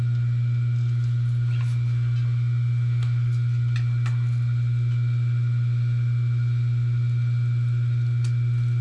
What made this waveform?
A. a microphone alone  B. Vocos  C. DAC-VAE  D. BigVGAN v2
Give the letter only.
A